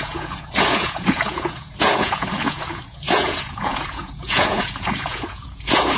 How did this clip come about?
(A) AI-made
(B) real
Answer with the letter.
A